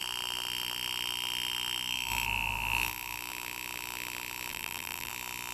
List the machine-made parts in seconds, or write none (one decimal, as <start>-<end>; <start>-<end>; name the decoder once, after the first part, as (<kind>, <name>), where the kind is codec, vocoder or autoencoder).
4.5-5.1 (vocoder, BigVGAN v2)